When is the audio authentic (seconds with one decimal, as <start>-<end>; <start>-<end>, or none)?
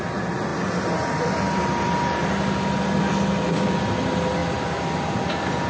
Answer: 0.0-5.7